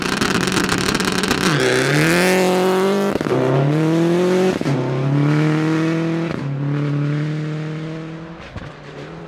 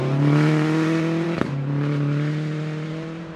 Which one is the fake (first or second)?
second